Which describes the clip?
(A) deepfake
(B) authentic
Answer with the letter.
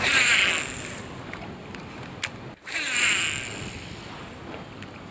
B